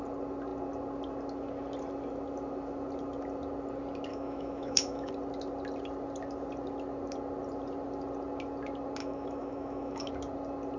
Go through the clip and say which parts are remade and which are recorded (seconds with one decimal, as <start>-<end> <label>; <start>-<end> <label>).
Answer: 0.0-4.1 recorded; 4.1-5.1 remade; 5.1-9.0 recorded; 9.0-10.1 remade; 10.1-10.8 recorded